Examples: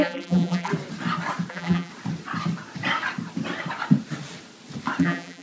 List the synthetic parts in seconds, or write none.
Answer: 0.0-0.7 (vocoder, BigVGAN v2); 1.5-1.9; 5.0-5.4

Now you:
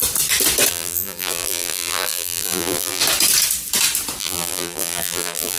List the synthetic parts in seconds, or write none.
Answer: 0.7-3.0 (vocoder, BigVGAN v2); 4.2-5.6

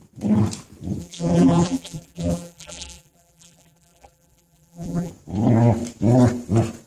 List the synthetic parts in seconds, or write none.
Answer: 1.0-5.1 (vocoder, BigVGAN v2)

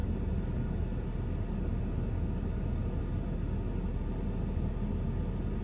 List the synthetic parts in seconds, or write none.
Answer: none

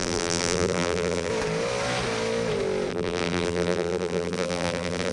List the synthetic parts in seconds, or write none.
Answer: 0.0-1.3 (vocoder, BigVGAN v2); 2.9-5.1

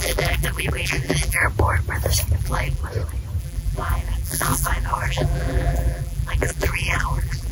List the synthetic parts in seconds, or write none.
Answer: 0.0-1.4 (vocoder, BigVGAN v2); 2.4-2.8; 3.4-7.5

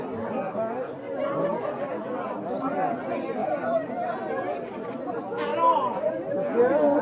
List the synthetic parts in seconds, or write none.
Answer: 3.4-4.2 (vocoder, BigVGAN v2); 5.5-6.1